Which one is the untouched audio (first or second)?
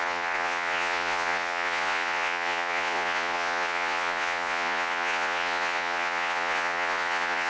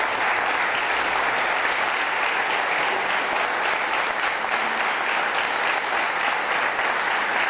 second